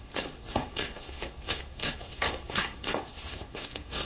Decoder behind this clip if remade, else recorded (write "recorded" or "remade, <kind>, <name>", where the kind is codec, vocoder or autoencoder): remade, codec, SNAC